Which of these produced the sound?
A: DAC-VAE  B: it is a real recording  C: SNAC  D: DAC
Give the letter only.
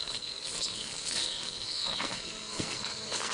C